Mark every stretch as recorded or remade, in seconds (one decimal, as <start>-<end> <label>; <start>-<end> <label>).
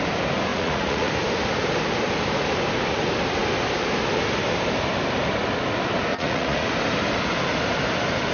0.0-0.5 recorded; 0.5-1.1 remade; 1.1-6.1 recorded; 6.1-6.7 remade; 6.7-8.3 recorded